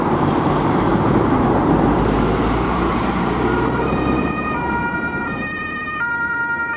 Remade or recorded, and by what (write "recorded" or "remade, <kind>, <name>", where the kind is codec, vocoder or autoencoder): remade, vocoder, BigVGAN v2